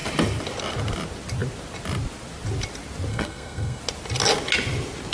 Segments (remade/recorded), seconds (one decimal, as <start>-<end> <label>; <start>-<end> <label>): 0.0-3.1 recorded; 3.1-3.8 remade; 3.8-5.1 recorded